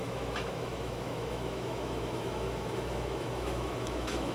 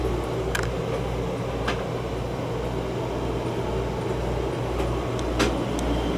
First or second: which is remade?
first